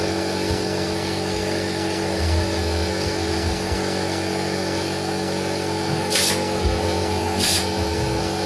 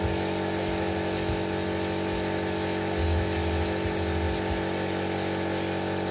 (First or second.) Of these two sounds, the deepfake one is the first